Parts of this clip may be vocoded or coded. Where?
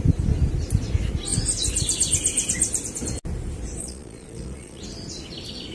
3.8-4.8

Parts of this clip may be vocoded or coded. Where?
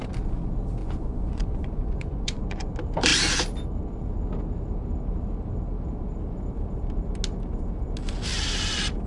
0.8-2.7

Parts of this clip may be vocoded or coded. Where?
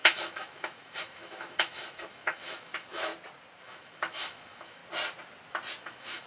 0.0-3.1; 3.6-4.8; 5.8-6.3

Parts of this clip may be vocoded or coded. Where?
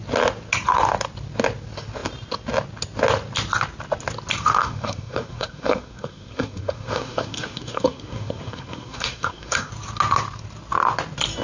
4.6-9.7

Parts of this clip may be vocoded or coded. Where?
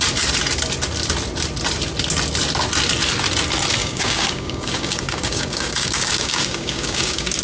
3.8-7.4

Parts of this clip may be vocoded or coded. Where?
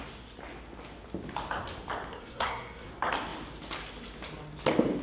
2.1-2.9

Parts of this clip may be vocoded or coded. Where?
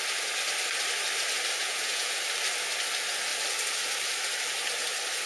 1.6-2.2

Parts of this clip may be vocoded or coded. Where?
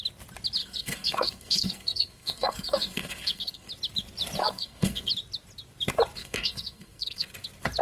0.6-3.7; 4.4-5.1; 6.2-7.3